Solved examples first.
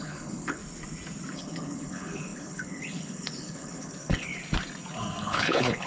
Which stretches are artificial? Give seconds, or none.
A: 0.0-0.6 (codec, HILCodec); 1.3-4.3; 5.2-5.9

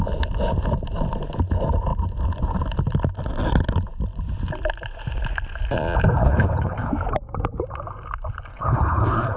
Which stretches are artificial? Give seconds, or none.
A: 6.2-6.9 (codec, HILCodec); 8.5-9.4

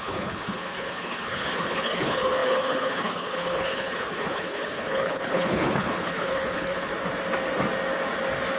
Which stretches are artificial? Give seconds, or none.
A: 0.0-6.9 (codec, HILCodec)

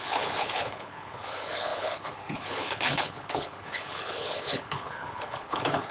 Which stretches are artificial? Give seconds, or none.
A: 0.0-5.9 (codec, HILCodec)

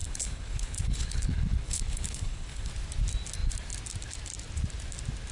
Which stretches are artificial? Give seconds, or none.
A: 0.0-2.7 (codec, HILCodec)

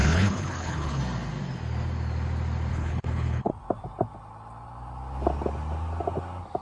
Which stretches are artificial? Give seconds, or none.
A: 0.0-1.0 (codec, HILCodec); 2.7-3.5

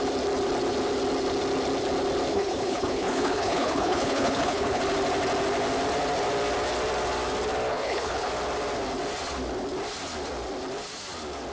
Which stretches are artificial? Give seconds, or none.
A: 2.3-4.8 (codec, HILCodec); 7.7-8.3

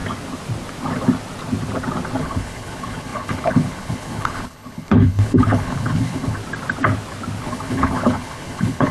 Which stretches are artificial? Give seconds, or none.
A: 2.2-6.4 (codec, HILCodec); 7.4-8.9